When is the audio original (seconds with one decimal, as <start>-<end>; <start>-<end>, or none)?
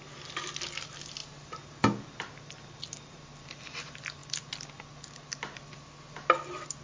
0.0-6.8